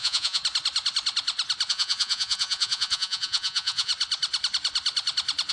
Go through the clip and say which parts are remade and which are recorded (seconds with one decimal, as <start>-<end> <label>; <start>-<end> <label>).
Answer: 0.0-0.4 remade; 0.4-1.7 recorded; 1.7-3.9 remade; 3.9-5.5 recorded